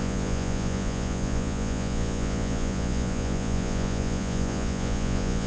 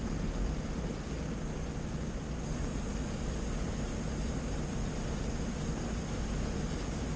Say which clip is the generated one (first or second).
first